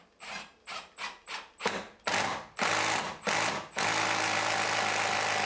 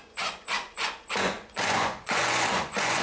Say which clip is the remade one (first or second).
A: second